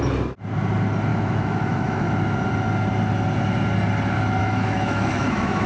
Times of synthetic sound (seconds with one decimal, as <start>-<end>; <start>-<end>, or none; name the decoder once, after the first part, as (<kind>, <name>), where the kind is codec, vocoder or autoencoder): 1.1-2.1 (autoencoder, DAC-VAE); 4.4-5.7